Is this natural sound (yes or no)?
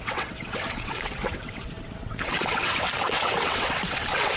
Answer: no